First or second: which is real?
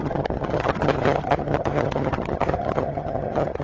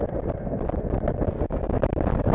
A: second